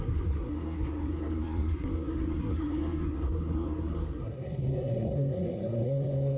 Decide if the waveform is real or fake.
fake